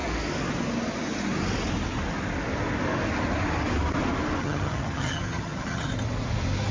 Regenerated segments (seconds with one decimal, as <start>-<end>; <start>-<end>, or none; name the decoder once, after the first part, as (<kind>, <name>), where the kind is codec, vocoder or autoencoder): 4.4-5.9 (vocoder, HiFi-GAN)